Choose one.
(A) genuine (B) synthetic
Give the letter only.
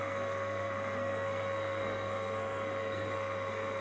B